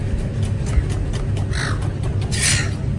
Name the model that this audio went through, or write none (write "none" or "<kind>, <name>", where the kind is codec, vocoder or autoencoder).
none